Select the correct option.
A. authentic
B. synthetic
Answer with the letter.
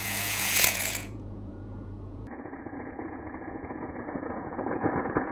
B